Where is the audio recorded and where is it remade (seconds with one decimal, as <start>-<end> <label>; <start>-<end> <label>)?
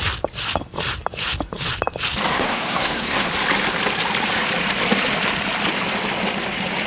0.0-2.3 recorded; 2.3-3.3 remade; 3.3-6.9 recorded